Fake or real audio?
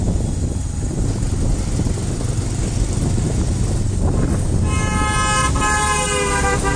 real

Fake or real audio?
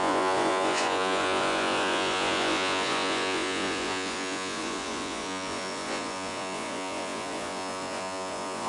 fake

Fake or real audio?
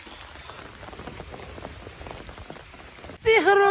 real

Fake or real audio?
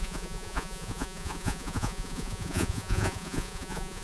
fake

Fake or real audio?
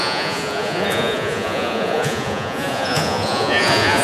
fake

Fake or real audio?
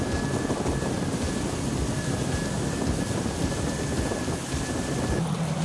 real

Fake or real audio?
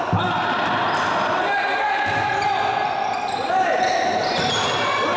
real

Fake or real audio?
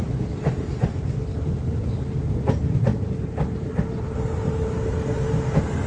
real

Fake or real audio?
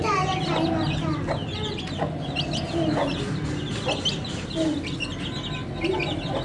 real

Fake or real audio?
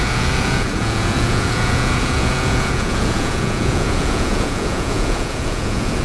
fake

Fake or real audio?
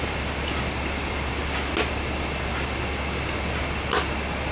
real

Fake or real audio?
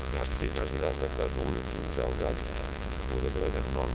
fake